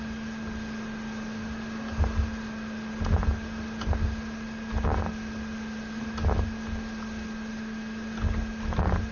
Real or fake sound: real